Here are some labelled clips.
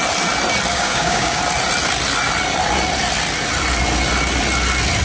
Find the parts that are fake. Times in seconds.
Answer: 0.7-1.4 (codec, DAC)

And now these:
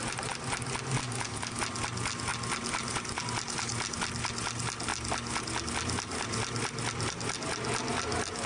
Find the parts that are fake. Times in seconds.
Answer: 1.0-1.6 (codec, DAC)

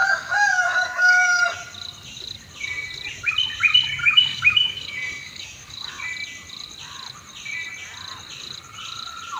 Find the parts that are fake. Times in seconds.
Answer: 0.0-1.4 (codec, DAC); 4.0-6.0

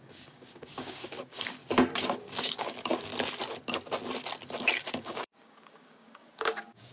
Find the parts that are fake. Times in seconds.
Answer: 0.0-1.6 (codec, DAC); 2.2-3.1; 4.9-6.9

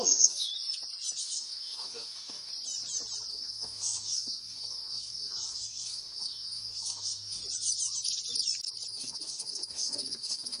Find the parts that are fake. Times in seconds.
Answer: 0.0-0.5 (codec, DAC); 1.2-2.5; 3.3-7.4; 8.9-10.6

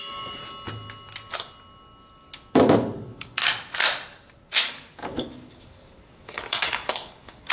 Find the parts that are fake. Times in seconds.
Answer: 0.0-0.4 (codec, DAC); 3.0-3.4; 4.4-7.5